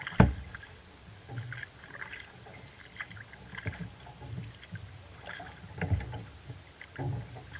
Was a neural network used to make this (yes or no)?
no